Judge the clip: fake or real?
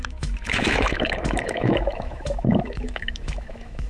fake